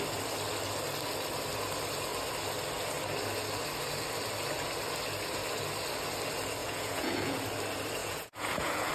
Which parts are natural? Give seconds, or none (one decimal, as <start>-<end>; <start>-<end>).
0.0-6.6; 7.4-8.0